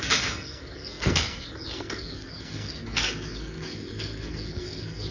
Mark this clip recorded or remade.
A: remade